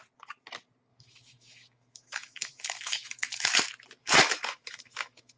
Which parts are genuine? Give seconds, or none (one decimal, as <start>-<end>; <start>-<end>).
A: 0.0-0.9; 3.6-4.0

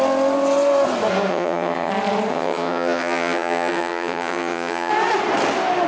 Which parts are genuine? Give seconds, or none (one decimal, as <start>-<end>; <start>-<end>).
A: 0.0-1.3; 1.9-2.3; 4.9-5.9

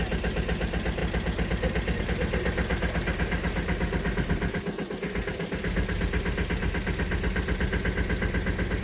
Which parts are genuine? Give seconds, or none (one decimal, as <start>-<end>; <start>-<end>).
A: 0.0-8.8

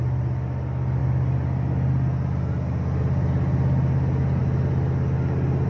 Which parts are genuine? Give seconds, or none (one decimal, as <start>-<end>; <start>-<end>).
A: 0.0-5.7

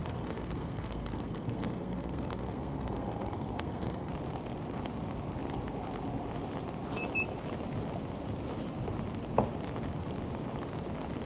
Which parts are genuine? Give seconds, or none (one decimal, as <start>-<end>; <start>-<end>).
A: 4.1-11.3

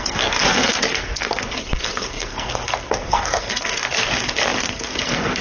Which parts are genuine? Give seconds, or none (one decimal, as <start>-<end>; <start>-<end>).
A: none